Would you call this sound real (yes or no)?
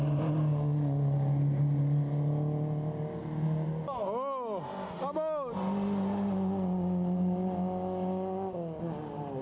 yes